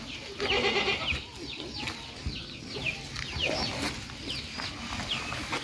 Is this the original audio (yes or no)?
yes